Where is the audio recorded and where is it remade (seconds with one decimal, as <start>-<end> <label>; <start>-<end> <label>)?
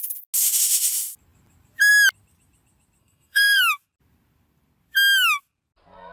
0.0-3.0 recorded; 3.0-3.6 remade; 3.6-6.1 recorded